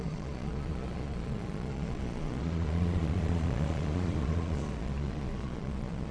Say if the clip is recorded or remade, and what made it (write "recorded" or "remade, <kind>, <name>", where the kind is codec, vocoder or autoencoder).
remade, vocoder, Vocos